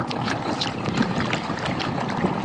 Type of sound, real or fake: real